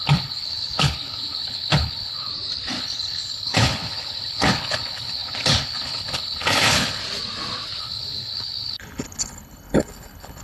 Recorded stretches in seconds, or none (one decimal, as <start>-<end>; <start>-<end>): 2.3-2.8; 7.0-7.8